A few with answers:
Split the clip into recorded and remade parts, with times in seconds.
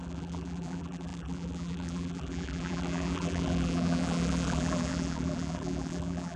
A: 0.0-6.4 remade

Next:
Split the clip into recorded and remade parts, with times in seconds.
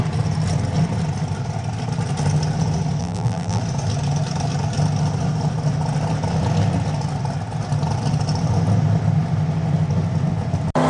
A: 0.0-3.0 recorded; 3.0-3.6 remade; 3.6-10.9 recorded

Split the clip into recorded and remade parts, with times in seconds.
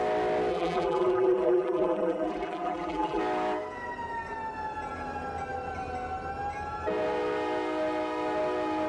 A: 0.0-0.5 recorded; 0.5-3.2 remade; 3.2-8.9 recorded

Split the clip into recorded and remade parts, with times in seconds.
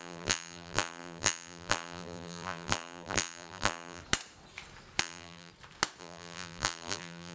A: 0.0-4.0 remade; 4.0-5.0 recorded; 5.0-5.5 remade; 5.5-6.0 recorded; 6.0-7.3 remade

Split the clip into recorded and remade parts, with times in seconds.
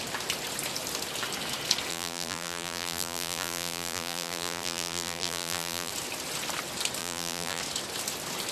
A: 0.0-1.9 recorded; 1.9-5.9 remade; 5.9-7.0 recorded; 7.0-7.6 remade; 7.6-8.5 recorded